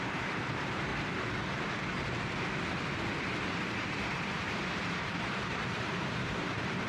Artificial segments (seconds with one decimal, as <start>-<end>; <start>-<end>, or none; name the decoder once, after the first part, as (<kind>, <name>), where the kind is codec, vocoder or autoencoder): 0.0-0.9 (vocoder, BigVGAN v2); 3.2-6.9